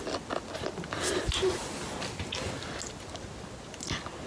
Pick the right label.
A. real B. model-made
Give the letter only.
A